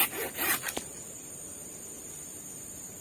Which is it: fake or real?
real